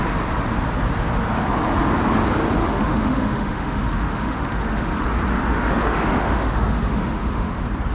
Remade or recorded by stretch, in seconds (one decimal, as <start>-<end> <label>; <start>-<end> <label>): 0.0-2.6 recorded; 2.6-5.0 remade; 5.0-5.5 recorded; 5.5-7.5 remade; 7.5-7.9 recorded